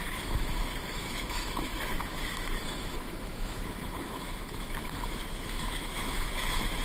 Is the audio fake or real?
fake